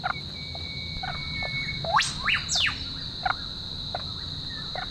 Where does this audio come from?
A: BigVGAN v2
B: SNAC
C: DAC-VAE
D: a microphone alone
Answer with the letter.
D